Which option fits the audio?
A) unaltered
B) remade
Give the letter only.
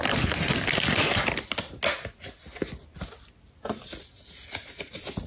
A